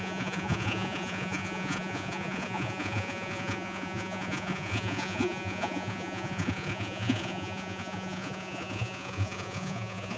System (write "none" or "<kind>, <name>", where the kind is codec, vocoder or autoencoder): vocoder, Vocos